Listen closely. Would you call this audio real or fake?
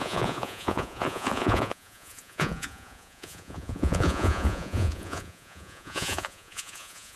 fake